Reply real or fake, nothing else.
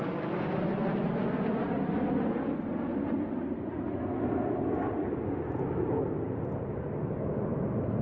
real